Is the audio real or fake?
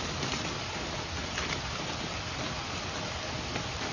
real